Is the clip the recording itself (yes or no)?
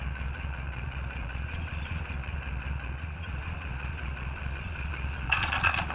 no